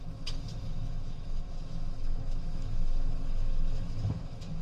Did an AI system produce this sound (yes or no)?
yes